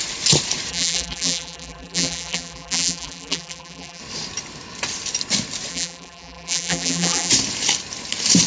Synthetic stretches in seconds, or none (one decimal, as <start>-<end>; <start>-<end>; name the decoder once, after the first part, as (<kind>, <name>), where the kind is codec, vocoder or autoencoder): 0.7-4.0 (vocoder, BigVGAN v2); 5.7-7.3